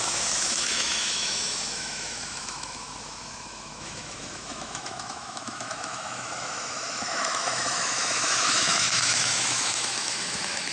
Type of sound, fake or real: fake